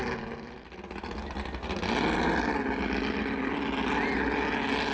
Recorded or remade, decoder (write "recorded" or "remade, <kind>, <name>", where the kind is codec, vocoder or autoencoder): recorded